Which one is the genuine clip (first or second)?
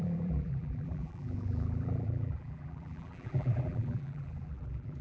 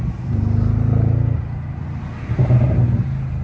second